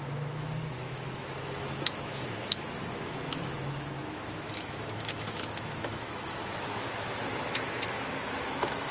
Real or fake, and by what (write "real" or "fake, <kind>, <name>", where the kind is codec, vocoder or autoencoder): fake, autoencoder, DAC-VAE